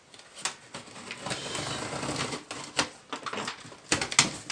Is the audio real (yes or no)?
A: yes